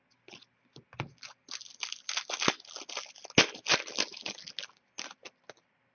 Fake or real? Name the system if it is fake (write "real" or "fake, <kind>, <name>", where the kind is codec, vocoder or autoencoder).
real